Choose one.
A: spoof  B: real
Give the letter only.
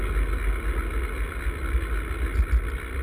B